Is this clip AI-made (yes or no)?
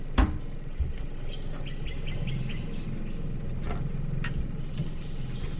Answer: no